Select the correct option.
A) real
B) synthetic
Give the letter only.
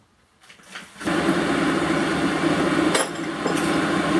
A